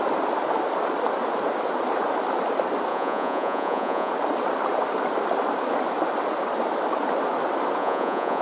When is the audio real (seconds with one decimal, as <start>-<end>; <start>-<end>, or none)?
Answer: 0.0-2.9; 4.1-7.8